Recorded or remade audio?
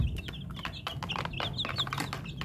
recorded